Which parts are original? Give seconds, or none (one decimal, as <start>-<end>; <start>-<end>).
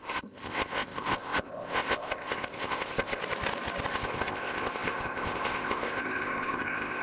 3.2-3.9